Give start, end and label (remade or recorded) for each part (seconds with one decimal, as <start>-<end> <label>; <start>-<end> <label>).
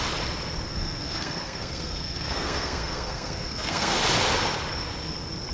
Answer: 0.0-0.7 recorded; 0.7-4.0 remade; 4.0-5.5 recorded